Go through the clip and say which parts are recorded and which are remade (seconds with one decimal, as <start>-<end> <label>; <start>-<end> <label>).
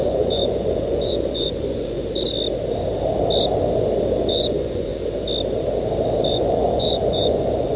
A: 0.0-2.0 remade; 2.0-4.3 recorded; 4.3-4.9 remade; 4.9-6.3 recorded; 6.3-7.8 remade